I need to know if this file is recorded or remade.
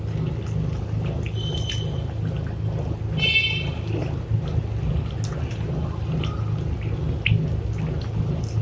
recorded